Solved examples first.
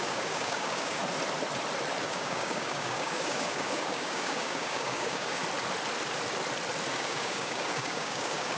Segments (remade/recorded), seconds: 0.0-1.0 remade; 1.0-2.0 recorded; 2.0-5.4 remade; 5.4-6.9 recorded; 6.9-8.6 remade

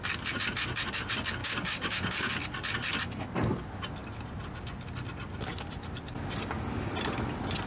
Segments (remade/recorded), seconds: 0.0-1.4 recorded; 1.4-2.3 remade; 2.3-7.7 recorded

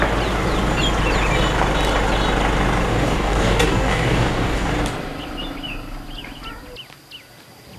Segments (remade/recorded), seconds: 0.0-2.9 recorded; 2.9-4.7 remade; 4.7-7.8 recorded

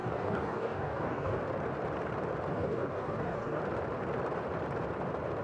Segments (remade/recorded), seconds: 0.0-1.4 remade; 1.4-2.5 recorded; 2.5-3.6 remade; 3.6-5.4 recorded

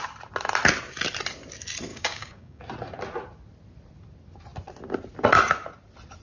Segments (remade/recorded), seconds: 0.0-1.9 recorded; 1.9-2.6 remade; 2.6-6.2 recorded

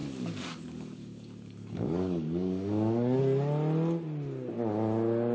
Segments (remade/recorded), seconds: 0.0-3.2 remade; 3.2-5.3 recorded

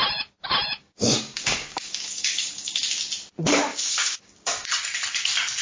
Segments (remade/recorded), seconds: 0.0-0.8 recorded; 0.8-2.8 remade; 2.8-3.7 recorded; 3.7-4.5 remade; 4.5-5.6 recorded